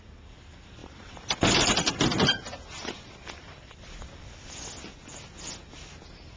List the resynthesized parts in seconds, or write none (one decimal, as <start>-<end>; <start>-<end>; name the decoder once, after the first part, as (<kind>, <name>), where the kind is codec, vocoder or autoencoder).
0.8-4.6 (vocoder, BigVGAN v2)